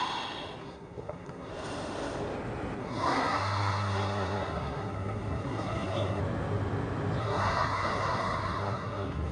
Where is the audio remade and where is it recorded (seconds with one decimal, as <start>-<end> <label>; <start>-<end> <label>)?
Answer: 0.0-0.6 recorded; 0.6-1.5 remade; 1.5-2.8 recorded; 2.8-6.2 remade; 6.2-7.2 recorded; 7.2-9.3 remade